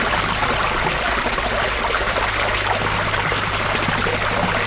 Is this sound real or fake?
real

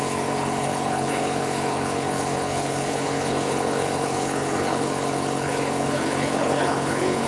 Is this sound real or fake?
fake